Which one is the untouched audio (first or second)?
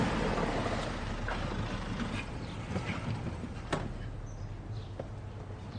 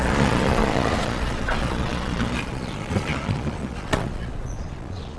first